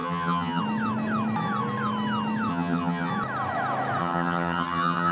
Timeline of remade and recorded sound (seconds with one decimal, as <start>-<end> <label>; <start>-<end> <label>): 0.0-0.6 remade; 0.6-2.5 recorded; 2.5-3.1 remade; 3.1-4.0 recorded; 4.0-5.1 remade